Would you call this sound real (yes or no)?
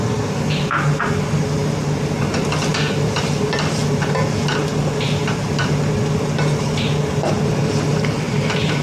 yes